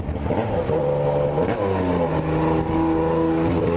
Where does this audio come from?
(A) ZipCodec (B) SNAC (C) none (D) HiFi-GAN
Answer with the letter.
C